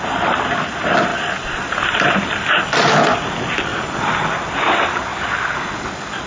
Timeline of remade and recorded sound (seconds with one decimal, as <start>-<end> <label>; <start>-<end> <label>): 0.0-1.1 recorded; 1.1-3.0 remade; 3.0-3.7 recorded; 3.7-4.2 remade; 4.2-6.3 recorded